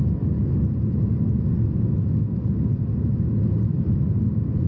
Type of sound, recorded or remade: recorded